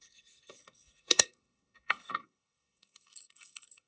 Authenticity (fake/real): fake